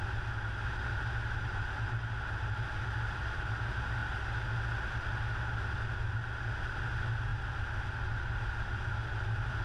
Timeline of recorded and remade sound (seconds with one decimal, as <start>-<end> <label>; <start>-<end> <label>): 0.0-9.6 recorded